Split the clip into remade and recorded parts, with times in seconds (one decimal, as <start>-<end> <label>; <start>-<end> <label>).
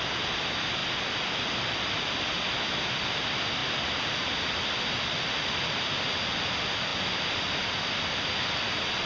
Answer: 0.0-9.1 recorded